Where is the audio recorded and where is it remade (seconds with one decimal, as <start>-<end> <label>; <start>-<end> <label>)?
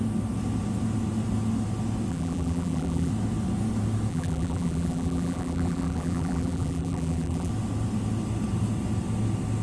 0.0-2.1 recorded; 2.1-3.1 remade; 3.1-4.1 recorded; 4.1-7.5 remade; 7.5-9.6 recorded